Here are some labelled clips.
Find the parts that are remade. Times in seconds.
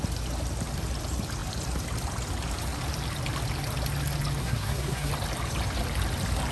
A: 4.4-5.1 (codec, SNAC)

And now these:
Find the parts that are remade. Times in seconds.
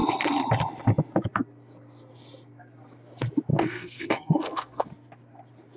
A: 3.5-4.9 (codec, SNAC)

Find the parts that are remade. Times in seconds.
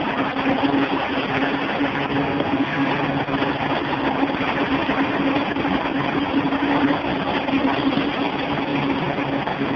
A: 2.2-2.9 (codec, SNAC)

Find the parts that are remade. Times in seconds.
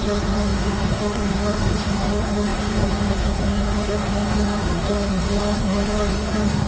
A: 0.0-6.7 (codec, SNAC)